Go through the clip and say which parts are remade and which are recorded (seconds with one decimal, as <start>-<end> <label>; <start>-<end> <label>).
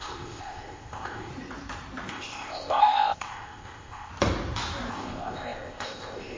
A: 0.0-1.3 remade; 1.3-2.1 recorded; 2.1-4.1 remade; 4.1-4.9 recorded; 4.9-6.4 remade